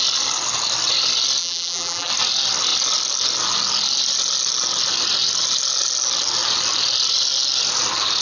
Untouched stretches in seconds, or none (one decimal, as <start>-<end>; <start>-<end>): 0.0-1.4; 2.1-8.2